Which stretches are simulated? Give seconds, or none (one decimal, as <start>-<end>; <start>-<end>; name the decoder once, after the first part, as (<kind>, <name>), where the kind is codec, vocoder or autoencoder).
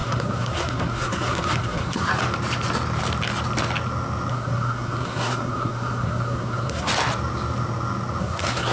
0.0-2.1 (codec, SNAC); 4.3-6.9; 8.2-8.7